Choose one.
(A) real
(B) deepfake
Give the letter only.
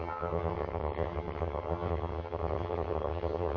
B